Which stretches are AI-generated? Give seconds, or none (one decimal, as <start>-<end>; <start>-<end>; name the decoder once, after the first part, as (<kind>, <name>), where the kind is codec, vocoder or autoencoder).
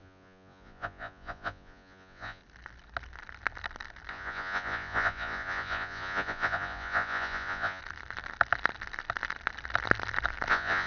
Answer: 0.0-2.4 (vocoder, Vocos); 4.1-7.8; 10.5-10.9